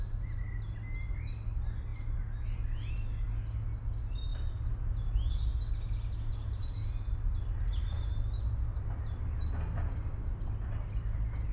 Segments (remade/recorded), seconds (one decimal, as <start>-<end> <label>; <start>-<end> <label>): 0.0-11.5 recorded